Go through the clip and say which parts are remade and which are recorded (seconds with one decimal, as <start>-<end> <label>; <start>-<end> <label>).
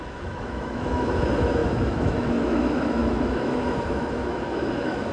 0.0-5.1 remade